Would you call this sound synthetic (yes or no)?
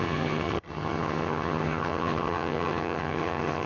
yes